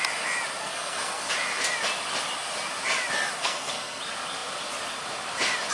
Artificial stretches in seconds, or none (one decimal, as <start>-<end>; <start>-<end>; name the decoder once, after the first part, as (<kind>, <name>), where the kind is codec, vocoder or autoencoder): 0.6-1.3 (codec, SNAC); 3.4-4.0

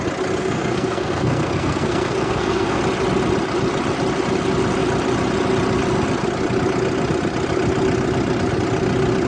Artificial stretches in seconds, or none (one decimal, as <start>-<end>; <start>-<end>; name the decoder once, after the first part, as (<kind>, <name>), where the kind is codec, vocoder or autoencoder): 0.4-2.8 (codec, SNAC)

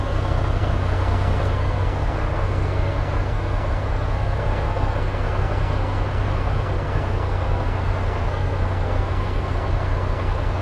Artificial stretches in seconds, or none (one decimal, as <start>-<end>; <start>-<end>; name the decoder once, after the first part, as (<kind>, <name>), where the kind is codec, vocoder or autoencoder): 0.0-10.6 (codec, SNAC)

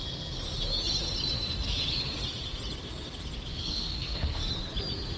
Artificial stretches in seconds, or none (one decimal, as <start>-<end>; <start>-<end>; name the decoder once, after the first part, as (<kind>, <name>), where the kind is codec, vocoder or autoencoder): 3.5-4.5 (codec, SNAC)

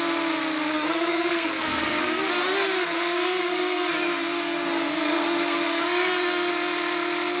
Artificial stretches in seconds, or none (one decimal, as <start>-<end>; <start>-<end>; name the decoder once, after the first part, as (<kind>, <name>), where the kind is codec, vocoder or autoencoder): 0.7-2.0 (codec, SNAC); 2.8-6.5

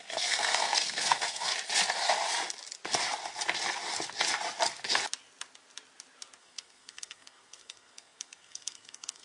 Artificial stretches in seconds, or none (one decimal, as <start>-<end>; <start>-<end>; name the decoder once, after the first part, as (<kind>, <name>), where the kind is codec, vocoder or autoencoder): 0.0-1.5 (codec, SNAC); 6.4-9.2